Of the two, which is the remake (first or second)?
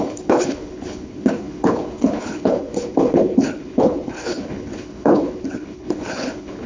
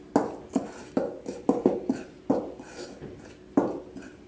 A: first